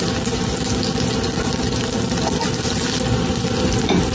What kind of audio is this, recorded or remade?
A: recorded